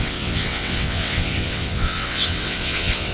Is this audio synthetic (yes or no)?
yes